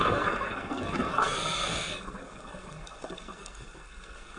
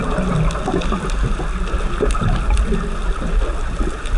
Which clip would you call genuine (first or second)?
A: second